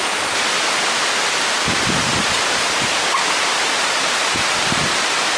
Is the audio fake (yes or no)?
no